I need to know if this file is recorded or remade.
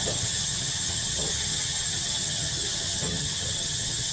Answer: remade